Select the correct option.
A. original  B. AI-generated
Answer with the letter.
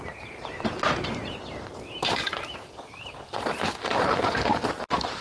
B